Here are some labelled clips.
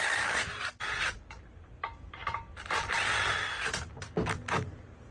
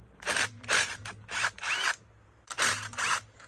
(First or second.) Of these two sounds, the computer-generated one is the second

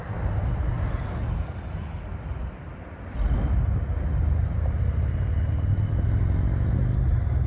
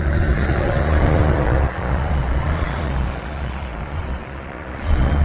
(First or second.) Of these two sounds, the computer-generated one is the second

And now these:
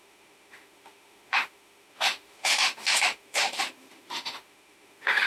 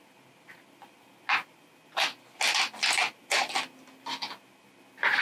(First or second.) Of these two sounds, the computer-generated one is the first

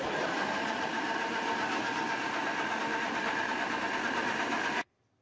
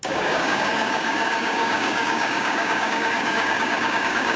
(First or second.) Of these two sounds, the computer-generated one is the second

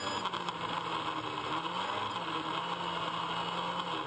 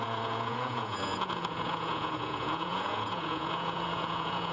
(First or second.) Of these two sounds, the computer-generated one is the second